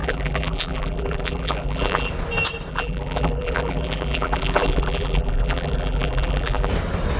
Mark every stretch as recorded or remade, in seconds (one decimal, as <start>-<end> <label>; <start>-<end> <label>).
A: 0.0-2.1 remade; 2.1-2.7 recorded; 2.7-6.7 remade; 6.7-7.2 recorded